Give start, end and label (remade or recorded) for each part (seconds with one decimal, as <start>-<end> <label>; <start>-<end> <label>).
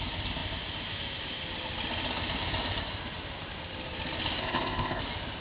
0.0-4.4 recorded; 4.4-5.0 remade; 5.0-5.4 recorded